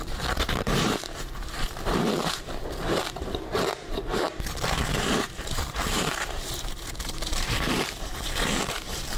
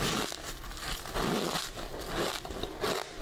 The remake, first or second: first